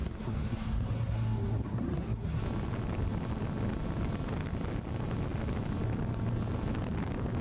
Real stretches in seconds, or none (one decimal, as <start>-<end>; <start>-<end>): 2.4-7.4